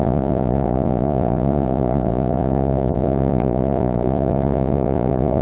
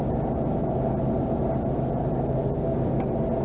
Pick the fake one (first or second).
first